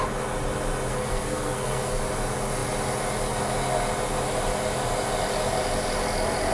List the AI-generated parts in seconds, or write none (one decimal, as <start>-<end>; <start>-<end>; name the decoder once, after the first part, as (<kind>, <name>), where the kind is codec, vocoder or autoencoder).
0.9-2.0 (codec, SNAC)